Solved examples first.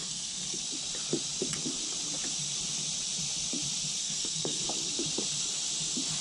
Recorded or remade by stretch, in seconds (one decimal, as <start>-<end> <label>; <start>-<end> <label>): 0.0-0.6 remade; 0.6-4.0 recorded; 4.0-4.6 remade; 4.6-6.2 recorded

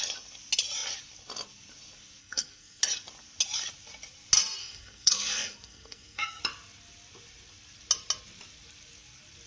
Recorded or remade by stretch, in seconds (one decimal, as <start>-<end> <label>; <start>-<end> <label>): 0.0-2.2 recorded; 2.2-2.8 remade; 2.8-4.6 recorded; 4.6-6.4 remade; 6.4-9.5 recorded

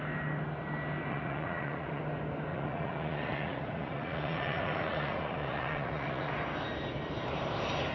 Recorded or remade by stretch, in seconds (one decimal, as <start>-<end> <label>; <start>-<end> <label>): 0.0-1.1 recorded; 1.1-2.0 remade; 2.0-2.5 recorded; 2.5-6.3 remade; 6.3-7.9 recorded

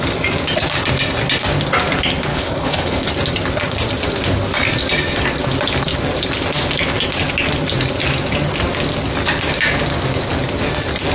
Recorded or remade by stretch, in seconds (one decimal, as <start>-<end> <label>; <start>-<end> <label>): 0.0-2.3 recorded; 2.3-3.1 remade; 3.1-11.1 recorded

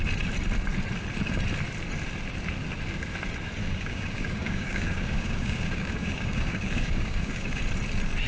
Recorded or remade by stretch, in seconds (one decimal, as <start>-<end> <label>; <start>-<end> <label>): 0.0-3.6 recorded; 3.6-7.6 remade; 7.6-8.3 recorded

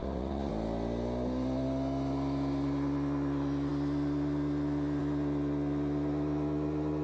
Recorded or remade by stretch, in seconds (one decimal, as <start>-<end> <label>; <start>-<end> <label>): 0.0-0.5 remade; 0.5-7.0 recorded

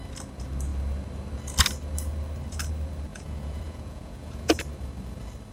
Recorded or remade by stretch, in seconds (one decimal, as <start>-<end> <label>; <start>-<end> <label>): 0.0-3.1 recorded; 3.1-4.6 remade; 4.6-5.5 recorded